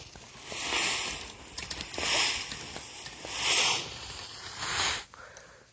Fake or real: real